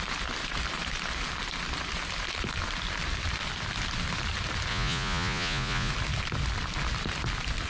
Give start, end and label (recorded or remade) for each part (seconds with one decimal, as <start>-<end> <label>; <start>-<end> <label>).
0.0-4.7 recorded; 4.7-5.9 remade; 5.9-7.7 recorded